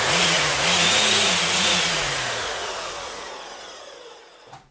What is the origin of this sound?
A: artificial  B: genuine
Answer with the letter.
A